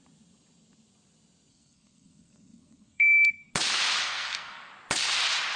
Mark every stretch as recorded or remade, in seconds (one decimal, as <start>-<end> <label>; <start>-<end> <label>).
0.0-1.5 recorded; 1.5-3.5 remade; 3.5-4.0 recorded; 4.0-4.7 remade; 4.7-5.6 recorded